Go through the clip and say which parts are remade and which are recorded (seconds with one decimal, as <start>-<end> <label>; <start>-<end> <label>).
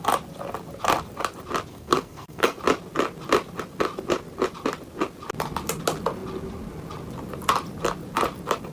0.0-1.7 recorded; 1.7-2.6 remade; 2.6-8.7 recorded